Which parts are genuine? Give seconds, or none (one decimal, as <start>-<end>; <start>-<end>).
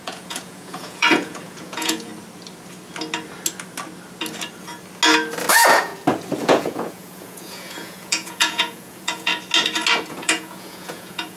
2.1-5.5; 5.9-6.4; 9.3-10.1